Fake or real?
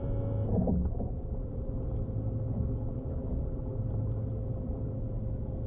real